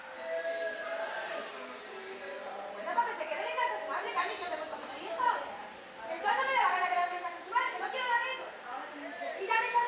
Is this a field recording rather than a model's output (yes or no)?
yes